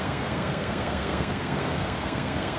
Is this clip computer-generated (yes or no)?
yes